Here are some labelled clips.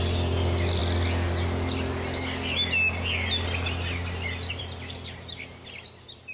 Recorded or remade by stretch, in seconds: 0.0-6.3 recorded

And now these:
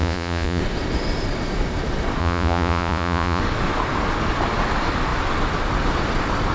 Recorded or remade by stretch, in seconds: 0.0-0.6 remade; 0.6-2.2 recorded; 2.2-3.4 remade; 3.4-6.5 recorded

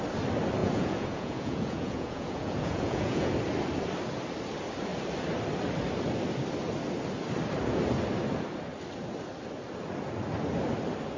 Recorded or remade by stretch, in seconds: 0.0-0.6 recorded; 0.6-3.3 remade; 3.3-11.2 recorded

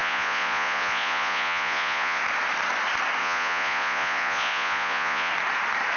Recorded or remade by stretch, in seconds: 0.0-2.2 remade; 2.2-3.2 recorded; 3.2-5.3 remade; 5.3-6.0 recorded

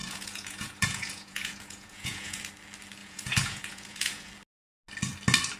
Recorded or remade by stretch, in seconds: 0.0-2.4 remade; 2.4-3.0 recorded; 3.0-4.3 remade; 4.3-5.6 recorded

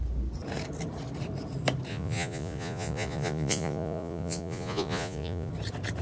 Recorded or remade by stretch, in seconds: 0.0-1.9 recorded; 1.9-5.5 remade; 5.5-6.0 recorded

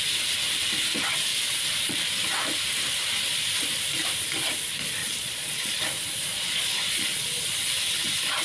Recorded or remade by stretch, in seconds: 0.0-1.3 recorded; 1.3-2.1 remade; 2.1-5.0 recorded; 5.0-5.8 remade; 5.8-6.3 recorded; 6.3-7.3 remade; 7.3-8.4 recorded

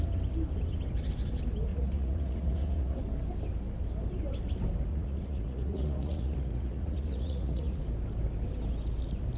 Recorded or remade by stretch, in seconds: 0.0-1.7 recorded; 1.7-3.0 remade; 3.0-4.9 recorded; 4.9-7.8 remade; 7.8-9.4 recorded